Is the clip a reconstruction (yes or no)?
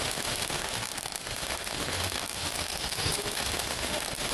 yes